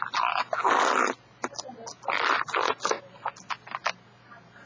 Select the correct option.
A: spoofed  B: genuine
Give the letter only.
B